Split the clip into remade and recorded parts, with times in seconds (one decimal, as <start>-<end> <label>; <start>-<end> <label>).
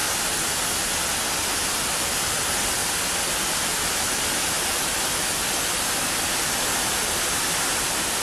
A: 0.0-8.2 recorded